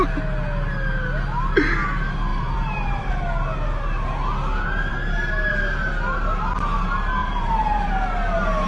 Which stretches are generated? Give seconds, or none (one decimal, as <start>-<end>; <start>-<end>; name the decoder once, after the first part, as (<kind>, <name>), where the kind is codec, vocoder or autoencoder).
2.3-3.1 (vocoder, BigVGAN v2); 7.2-7.9